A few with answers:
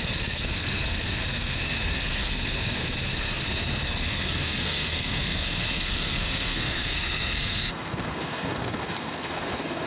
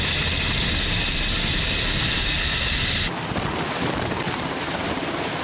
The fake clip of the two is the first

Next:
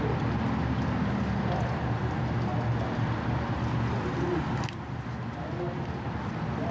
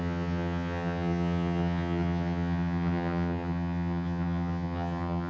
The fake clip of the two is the second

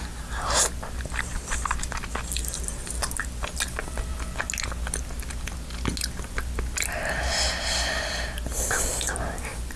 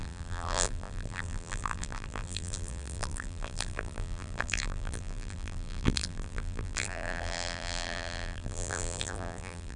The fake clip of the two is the second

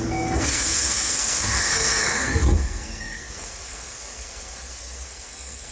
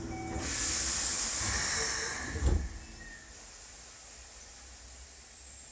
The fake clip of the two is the first